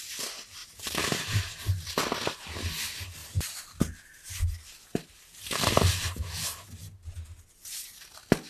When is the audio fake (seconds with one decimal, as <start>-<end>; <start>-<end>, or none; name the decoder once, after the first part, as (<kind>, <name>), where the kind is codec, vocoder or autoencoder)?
0.6-1.4 (vocoder, BigVGAN v2); 3.2-3.8; 4.9-6.2